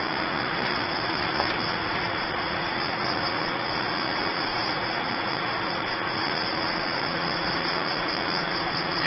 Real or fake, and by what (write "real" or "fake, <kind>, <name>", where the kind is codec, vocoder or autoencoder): fake, vocoder, Vocos